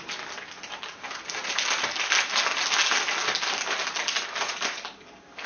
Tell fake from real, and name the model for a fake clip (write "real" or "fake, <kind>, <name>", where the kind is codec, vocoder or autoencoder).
real